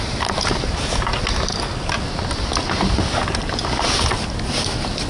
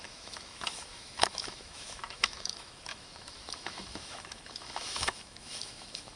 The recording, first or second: first